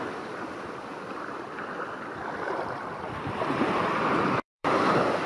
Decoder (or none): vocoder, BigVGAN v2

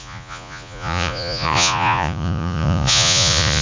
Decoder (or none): vocoder, Vocos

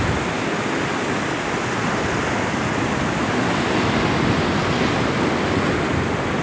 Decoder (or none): none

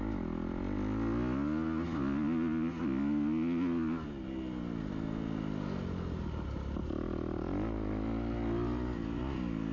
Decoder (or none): none